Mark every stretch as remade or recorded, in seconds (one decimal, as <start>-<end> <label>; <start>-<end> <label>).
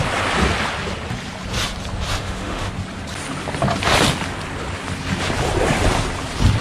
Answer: 0.0-2.2 recorded; 2.2-2.7 remade; 2.7-6.6 recorded